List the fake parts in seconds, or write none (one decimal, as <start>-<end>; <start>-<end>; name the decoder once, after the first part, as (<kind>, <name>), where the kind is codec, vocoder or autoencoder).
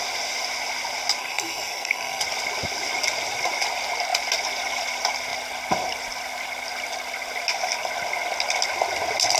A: 1.2-2.2 (codec, SNAC)